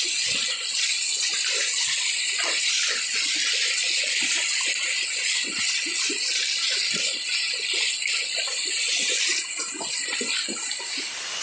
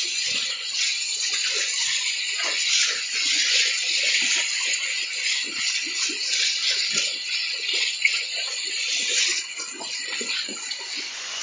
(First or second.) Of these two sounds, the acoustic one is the first